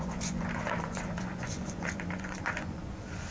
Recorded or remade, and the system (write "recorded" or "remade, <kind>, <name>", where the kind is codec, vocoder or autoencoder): remade, vocoder, Vocos